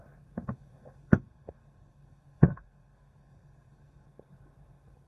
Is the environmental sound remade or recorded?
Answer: remade